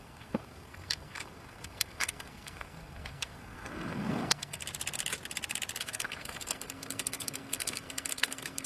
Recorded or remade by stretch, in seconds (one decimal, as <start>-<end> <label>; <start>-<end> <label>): 0.0-4.6 remade; 4.6-5.8 recorded; 5.8-8.7 remade